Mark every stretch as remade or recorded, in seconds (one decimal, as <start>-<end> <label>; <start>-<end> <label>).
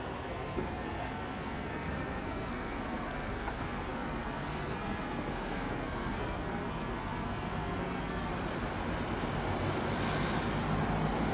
0.0-8.3 remade; 8.3-11.3 recorded